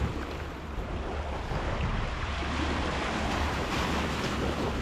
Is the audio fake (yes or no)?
no